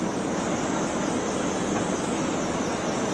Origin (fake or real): real